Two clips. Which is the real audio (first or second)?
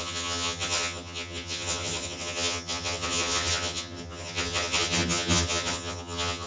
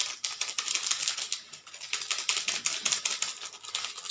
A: second